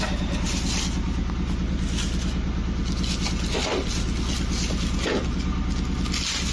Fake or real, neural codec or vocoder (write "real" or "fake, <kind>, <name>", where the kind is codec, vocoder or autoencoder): real